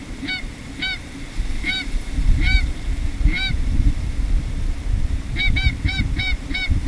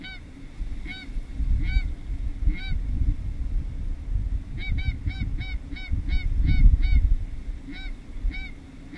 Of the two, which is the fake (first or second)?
first